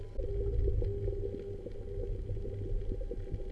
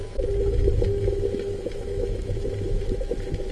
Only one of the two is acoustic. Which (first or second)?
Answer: first